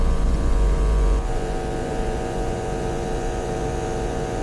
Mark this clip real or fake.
fake